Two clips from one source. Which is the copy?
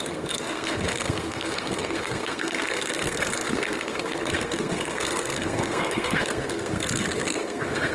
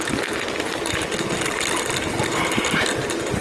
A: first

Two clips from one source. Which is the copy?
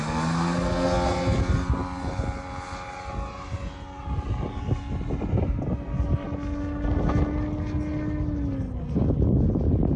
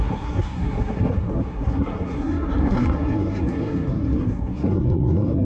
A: second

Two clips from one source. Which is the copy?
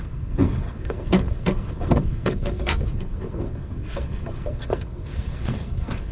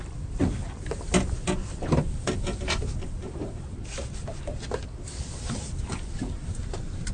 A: first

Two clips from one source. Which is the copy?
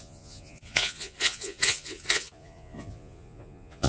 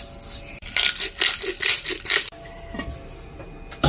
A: first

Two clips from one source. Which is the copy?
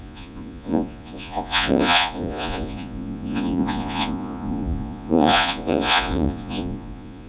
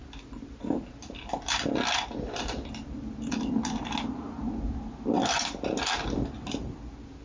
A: first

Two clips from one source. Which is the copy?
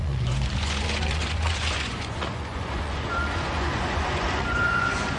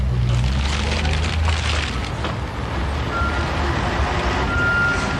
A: first